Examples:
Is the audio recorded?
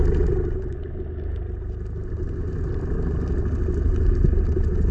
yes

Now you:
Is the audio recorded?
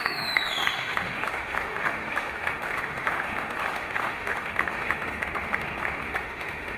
no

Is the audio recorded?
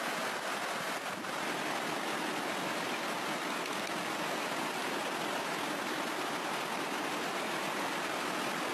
yes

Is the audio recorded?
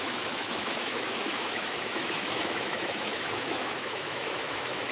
no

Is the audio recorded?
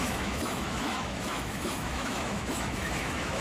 no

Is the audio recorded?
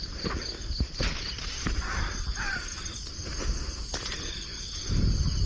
yes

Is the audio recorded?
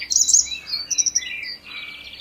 yes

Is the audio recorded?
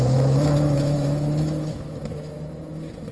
no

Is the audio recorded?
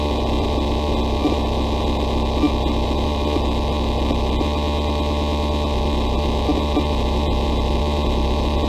yes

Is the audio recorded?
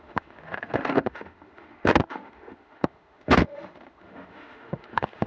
no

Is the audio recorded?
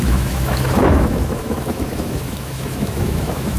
no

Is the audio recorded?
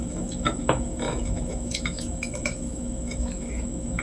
no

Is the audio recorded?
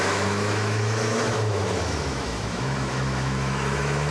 no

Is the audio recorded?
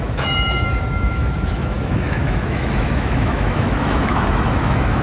no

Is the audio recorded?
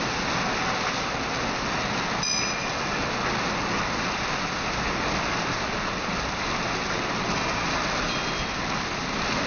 yes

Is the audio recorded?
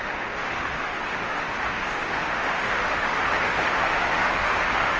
no